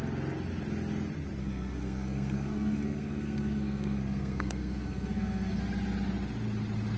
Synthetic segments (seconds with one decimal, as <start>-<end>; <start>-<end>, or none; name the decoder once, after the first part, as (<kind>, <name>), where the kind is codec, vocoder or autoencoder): 1.4-5.6 (codec, SNAC)